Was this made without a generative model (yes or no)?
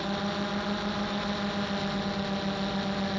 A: yes